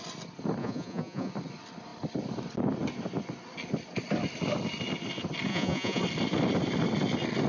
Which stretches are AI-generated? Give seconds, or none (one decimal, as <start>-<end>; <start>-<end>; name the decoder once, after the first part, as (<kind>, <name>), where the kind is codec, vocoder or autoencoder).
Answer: 0.6-1.3 (vocoder, Vocos); 5.5-6.0